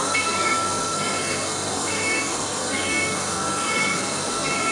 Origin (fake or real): fake